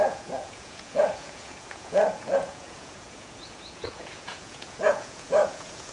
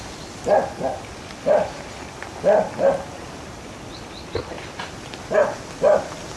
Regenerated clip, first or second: first